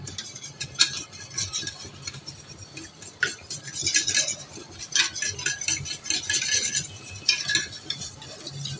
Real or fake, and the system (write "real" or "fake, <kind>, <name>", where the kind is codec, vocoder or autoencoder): real